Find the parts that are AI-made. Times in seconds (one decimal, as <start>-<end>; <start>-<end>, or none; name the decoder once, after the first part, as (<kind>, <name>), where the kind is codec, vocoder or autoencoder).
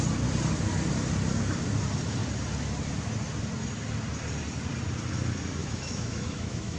5.6-6.8 (autoencoder, DAC-VAE)